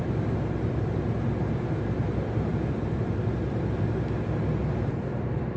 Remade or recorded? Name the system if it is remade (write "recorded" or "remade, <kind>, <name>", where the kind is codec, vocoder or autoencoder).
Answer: recorded